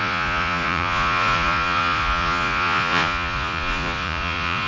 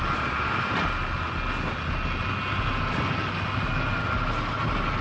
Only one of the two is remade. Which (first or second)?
first